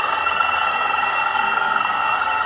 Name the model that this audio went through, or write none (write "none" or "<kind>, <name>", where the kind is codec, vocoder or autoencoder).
codec, SNAC